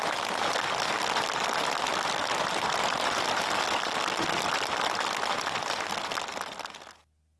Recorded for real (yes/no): yes